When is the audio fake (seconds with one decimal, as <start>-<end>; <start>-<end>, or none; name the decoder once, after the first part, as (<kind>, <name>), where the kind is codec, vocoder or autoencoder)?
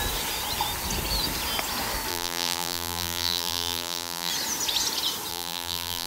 2.1-4.3 (vocoder, BigVGAN v2); 5.3-6.1